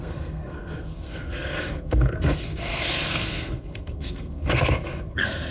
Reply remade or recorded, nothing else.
remade